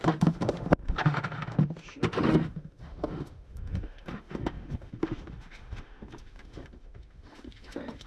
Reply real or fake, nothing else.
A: fake